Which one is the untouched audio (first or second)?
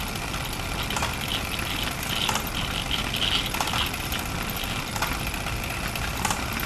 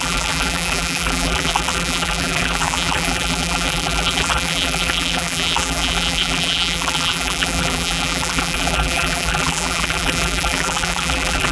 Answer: first